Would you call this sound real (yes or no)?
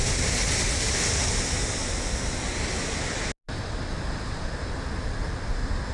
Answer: yes